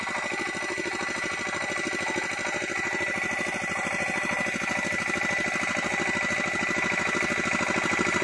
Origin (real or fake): real